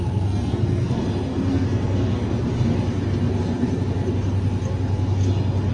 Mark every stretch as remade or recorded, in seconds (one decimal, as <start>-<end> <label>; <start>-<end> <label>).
0.0-1.0 remade; 1.0-1.5 recorded; 1.5-2.2 remade; 2.2-5.7 recorded